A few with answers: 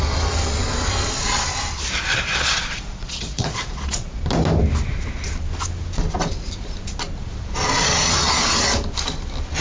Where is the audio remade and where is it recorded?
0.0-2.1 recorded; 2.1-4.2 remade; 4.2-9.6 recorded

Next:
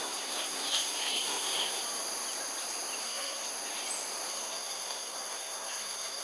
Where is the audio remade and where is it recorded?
0.0-1.8 remade; 1.8-3.0 recorded; 3.0-3.5 remade; 3.5-4.3 recorded; 4.3-6.2 remade